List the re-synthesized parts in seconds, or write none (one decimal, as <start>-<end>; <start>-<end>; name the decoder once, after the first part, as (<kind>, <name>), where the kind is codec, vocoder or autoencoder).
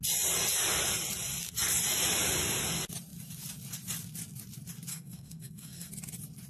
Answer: 4.9-5.9 (codec, SNAC)